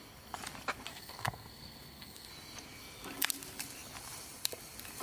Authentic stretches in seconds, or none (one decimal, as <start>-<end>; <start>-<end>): 0.0-0.9; 2.3-5.0

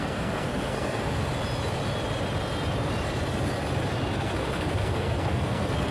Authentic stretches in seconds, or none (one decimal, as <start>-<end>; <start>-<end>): 1.2-4.2

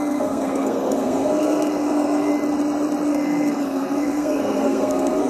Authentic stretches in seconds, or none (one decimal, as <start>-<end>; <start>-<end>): 2.3-3.1